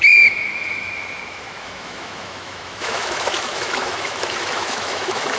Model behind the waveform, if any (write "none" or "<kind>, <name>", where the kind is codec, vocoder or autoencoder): autoencoder, DAC-VAE